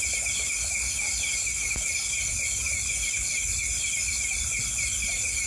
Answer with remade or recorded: recorded